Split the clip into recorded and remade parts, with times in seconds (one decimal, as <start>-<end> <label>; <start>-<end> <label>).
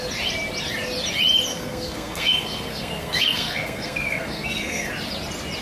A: 0.0-1.5 recorded; 1.5-4.9 remade; 4.9-5.6 recorded